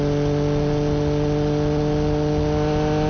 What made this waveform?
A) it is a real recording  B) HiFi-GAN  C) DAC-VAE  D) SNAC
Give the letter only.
A